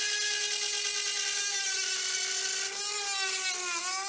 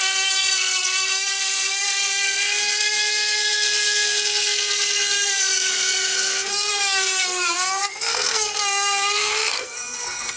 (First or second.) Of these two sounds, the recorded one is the first